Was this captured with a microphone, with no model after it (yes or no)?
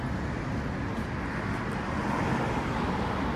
yes